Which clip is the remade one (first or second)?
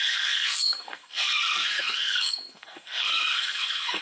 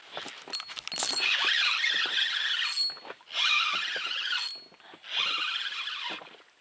first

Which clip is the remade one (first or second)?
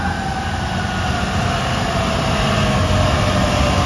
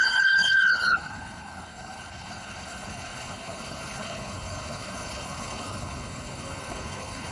second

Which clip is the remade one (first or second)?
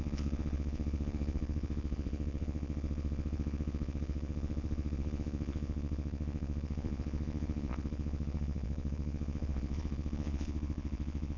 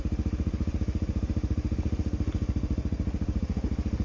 first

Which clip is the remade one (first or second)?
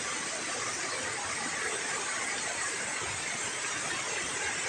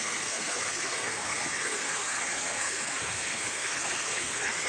second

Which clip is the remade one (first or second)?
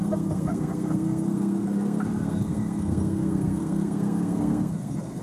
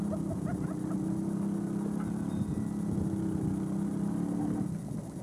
first